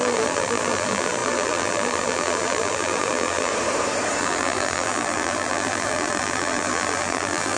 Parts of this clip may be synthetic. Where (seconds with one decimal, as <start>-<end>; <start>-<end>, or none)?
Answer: 0.0-3.5; 4.2-7.6